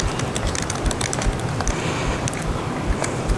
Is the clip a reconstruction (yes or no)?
no